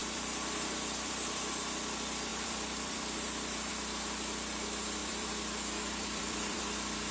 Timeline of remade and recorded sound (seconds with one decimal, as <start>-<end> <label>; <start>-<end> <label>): 0.0-1.5 remade; 1.5-2.3 recorded; 2.3-3.7 remade; 3.7-5.0 recorded; 5.0-6.6 remade; 6.6-7.1 recorded